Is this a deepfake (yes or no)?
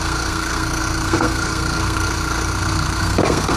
yes